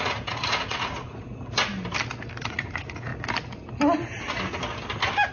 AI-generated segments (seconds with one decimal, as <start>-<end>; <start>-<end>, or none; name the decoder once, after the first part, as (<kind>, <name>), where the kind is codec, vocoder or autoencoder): 0.0-1.3 (vocoder, Vocos); 2.4-3.1